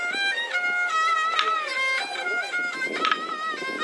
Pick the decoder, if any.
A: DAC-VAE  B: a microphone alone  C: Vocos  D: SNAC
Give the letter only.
B